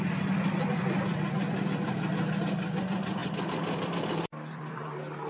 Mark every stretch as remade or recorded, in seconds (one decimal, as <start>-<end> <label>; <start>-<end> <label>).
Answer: 0.0-5.3 remade